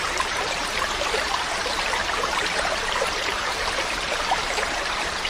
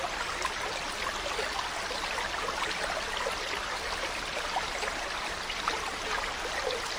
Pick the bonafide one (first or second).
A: second